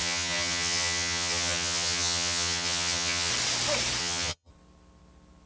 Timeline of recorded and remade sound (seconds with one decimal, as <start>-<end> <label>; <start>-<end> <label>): 0.0-3.3 remade; 3.3-4.0 recorded; 4.0-4.5 remade; 4.5-5.5 recorded